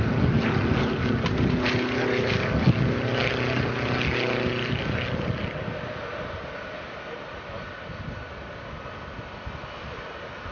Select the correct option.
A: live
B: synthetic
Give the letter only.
A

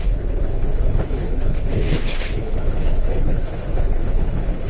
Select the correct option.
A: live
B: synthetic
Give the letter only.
B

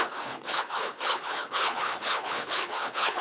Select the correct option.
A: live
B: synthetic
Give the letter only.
B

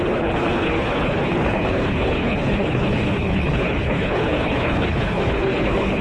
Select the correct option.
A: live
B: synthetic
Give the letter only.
B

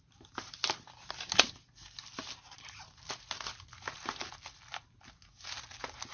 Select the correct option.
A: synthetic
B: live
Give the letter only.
B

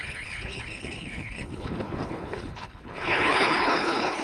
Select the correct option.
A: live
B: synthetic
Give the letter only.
B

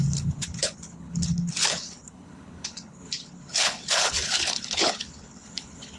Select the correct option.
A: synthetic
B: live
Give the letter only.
A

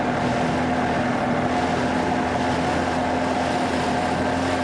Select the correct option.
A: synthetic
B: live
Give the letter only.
B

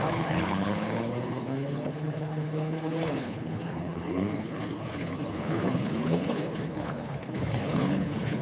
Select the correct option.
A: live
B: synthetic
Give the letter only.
B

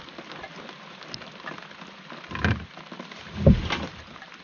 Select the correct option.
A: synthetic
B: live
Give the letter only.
B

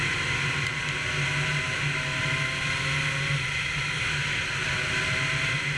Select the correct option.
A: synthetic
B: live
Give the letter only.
B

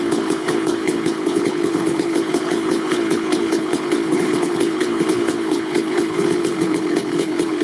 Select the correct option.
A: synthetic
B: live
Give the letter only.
A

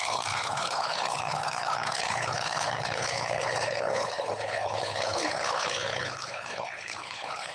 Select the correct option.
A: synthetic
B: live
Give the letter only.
A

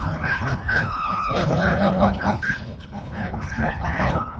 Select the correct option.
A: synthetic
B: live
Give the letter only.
A